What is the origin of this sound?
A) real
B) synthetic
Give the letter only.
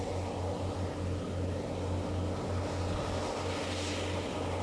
A